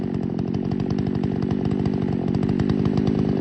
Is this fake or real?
real